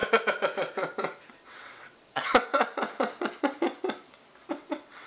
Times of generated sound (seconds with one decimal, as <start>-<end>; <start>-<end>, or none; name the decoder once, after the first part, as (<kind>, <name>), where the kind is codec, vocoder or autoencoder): 1.3-2.5 (vocoder, WaveNeXt); 4.5-5.1